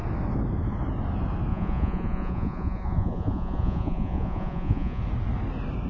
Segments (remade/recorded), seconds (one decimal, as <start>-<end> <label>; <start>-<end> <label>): 0.0-1.5 recorded; 1.5-5.0 remade; 5.0-5.9 recorded

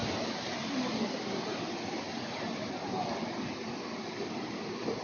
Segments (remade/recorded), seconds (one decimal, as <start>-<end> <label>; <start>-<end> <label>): 0.0-5.0 recorded

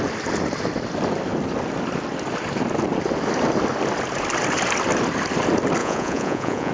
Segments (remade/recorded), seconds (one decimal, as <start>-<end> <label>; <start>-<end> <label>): 0.0-5.8 recorded; 5.8-6.7 remade

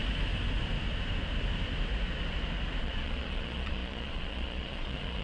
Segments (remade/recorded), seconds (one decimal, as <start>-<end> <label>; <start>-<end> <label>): 0.0-2.8 recorded; 2.8-5.2 remade

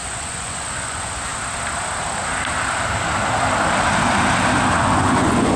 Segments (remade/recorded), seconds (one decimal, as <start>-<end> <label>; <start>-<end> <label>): 0.0-1.3 remade; 1.3-4.7 recorded; 4.7-5.6 remade